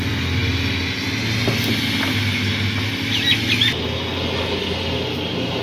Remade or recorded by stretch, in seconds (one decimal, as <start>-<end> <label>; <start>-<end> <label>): 0.0-5.6 recorded